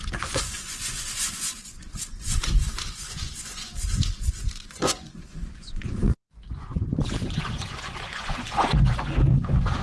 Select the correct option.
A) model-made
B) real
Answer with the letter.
A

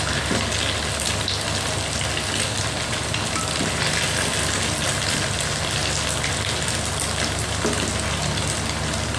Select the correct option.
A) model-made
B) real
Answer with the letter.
B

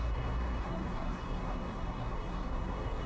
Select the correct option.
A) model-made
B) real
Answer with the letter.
A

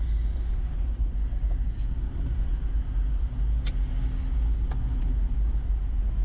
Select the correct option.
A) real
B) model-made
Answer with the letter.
A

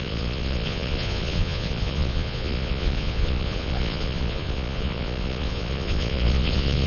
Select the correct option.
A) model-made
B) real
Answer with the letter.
A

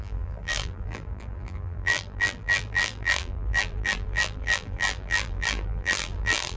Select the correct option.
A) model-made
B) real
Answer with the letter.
A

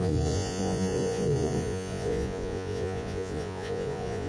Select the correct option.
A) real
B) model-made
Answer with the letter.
B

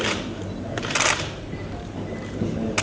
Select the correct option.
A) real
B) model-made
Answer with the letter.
A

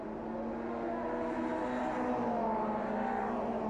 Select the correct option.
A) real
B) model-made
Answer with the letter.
A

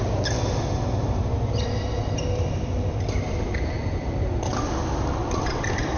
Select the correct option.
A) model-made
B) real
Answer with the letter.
B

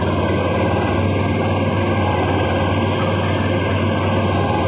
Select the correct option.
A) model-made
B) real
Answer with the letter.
B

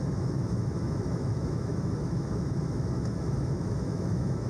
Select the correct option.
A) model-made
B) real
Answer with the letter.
A